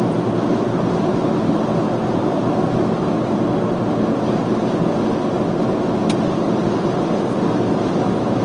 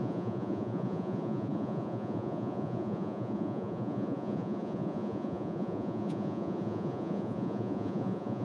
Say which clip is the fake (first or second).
second